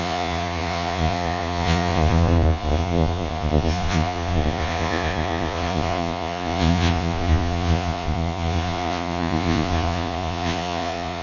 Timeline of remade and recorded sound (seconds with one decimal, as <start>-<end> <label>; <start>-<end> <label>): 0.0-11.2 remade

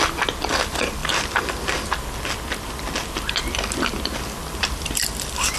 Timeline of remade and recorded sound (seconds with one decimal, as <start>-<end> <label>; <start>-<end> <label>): 0.0-5.6 recorded

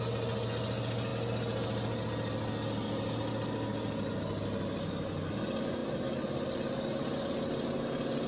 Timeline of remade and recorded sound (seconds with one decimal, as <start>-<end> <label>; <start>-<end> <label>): 0.0-8.3 recorded

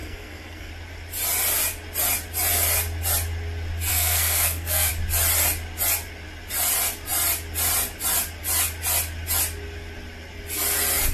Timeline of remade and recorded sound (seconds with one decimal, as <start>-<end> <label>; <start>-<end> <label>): 0.0-0.7 remade; 0.7-3.9 recorded; 3.9-4.9 remade; 4.9-11.1 recorded

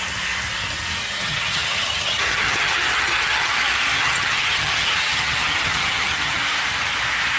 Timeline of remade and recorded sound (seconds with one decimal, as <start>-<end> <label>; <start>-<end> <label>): 0.0-1.0 recorded; 1.0-3.5 remade; 3.5-4.0 recorded; 4.0-6.4 remade; 6.4-7.4 recorded